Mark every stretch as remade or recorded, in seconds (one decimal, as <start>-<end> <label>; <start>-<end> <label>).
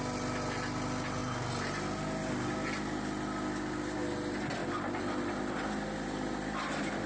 0.0-7.1 recorded